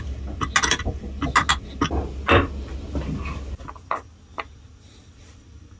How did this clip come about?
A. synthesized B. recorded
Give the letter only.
B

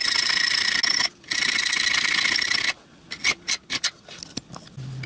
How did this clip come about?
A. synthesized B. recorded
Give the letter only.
B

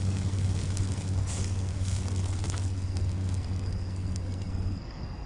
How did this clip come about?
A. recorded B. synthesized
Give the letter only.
B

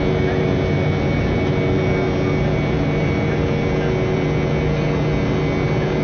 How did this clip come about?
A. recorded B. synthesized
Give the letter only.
A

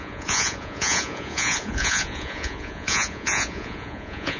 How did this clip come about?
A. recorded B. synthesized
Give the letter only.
B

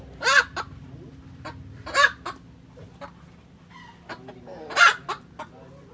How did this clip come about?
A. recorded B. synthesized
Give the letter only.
A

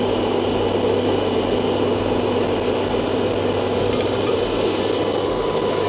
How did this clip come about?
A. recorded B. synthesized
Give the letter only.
A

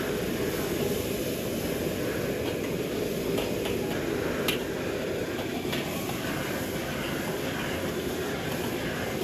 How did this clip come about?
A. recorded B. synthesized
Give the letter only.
A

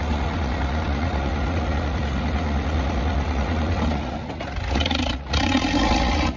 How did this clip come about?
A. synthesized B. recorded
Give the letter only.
A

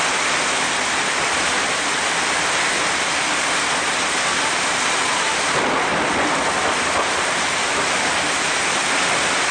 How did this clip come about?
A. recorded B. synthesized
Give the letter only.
A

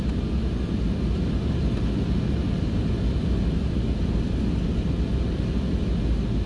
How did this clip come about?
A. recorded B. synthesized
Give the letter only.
A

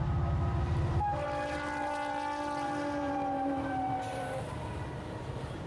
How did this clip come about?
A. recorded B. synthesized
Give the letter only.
B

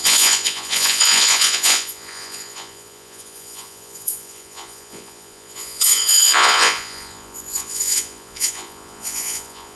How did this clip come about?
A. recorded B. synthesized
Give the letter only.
B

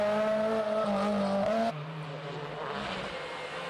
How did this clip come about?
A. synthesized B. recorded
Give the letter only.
B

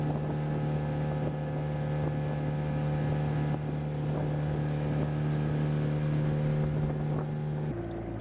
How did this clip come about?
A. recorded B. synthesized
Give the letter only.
A